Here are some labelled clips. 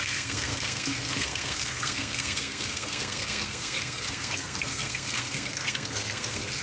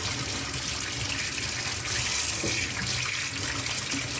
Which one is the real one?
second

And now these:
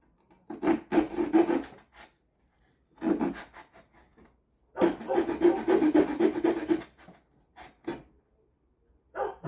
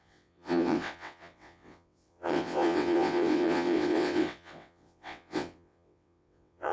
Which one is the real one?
first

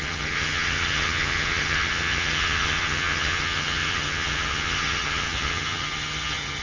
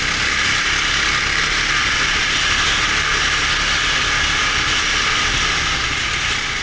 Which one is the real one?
second